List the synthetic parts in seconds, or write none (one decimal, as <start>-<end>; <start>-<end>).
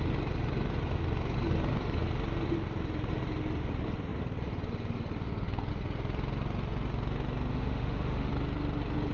7.5-8.3